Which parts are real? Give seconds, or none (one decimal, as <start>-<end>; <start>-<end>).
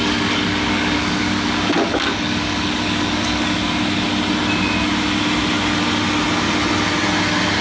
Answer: 3.6-7.6